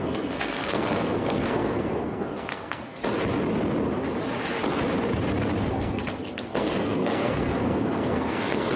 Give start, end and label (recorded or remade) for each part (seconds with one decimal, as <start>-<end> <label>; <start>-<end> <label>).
0.0-3.0 remade; 3.0-5.7 recorded; 5.7-8.8 remade